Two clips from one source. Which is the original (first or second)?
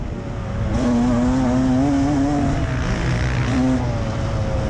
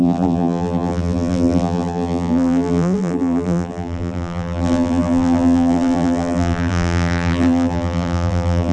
first